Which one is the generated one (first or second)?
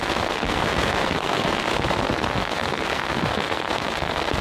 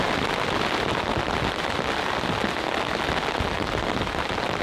first